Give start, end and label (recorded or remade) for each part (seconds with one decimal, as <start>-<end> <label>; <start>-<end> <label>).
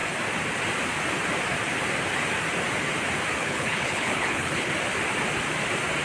0.0-3.4 recorded; 3.4-4.7 remade; 4.7-6.0 recorded